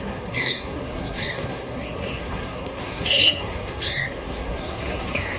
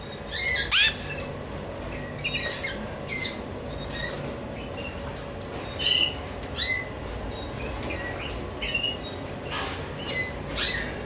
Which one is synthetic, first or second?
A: first